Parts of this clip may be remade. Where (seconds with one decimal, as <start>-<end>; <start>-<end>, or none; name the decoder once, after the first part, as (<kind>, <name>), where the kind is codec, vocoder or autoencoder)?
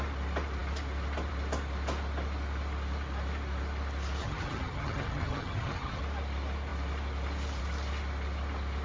4.2-6.0 (vocoder, HiFi-GAN)